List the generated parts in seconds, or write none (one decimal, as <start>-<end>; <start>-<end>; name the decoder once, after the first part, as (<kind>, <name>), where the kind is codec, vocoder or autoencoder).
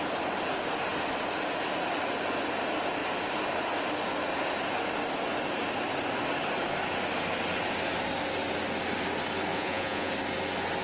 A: 9.5-10.1 (vocoder, Vocos)